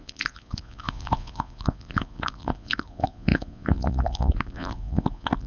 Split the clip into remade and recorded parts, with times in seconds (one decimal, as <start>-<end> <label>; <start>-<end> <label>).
0.0-5.5 remade

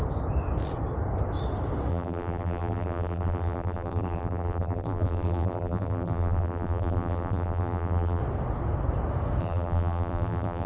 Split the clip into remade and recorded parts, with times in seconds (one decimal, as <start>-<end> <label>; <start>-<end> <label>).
0.0-1.9 recorded; 1.9-8.2 remade; 8.2-9.4 recorded; 9.4-10.7 remade

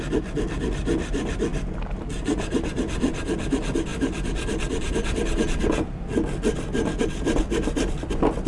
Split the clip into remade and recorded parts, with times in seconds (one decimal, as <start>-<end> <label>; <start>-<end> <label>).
0.0-8.5 recorded

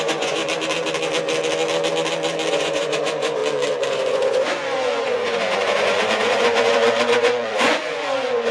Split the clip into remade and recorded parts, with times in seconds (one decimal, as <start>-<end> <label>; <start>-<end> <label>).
0.0-0.4 remade; 0.4-2.5 recorded; 2.5-3.4 remade; 3.4-3.9 recorded; 3.9-8.5 remade

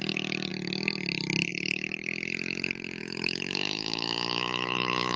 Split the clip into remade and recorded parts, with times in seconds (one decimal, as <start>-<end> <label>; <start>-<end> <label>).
0.0-3.0 recorded; 3.0-5.2 remade